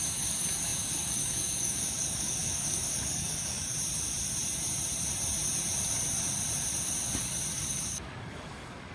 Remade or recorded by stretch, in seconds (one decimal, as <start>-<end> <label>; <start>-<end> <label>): 0.0-3.7 remade; 3.7-7.7 recorded; 7.7-8.9 remade